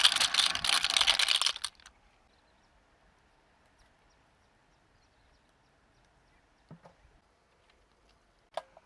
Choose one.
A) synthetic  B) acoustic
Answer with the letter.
B